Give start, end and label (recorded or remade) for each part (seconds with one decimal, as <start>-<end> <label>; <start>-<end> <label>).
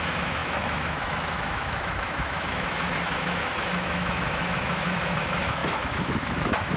0.0-6.8 remade